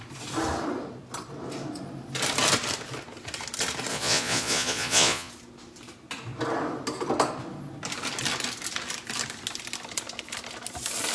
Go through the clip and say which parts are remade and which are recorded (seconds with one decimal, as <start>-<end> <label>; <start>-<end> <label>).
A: 0.0-3.9 recorded; 3.9-5.3 remade; 5.3-11.1 recorded